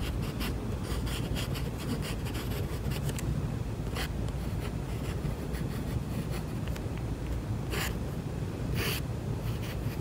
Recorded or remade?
recorded